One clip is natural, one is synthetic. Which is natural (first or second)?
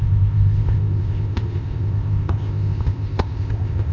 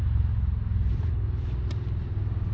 second